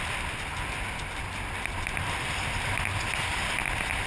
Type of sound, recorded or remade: recorded